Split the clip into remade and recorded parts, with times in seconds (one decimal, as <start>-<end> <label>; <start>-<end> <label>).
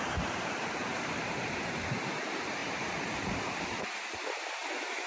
0.0-5.1 remade